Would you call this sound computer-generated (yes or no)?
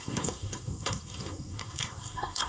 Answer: yes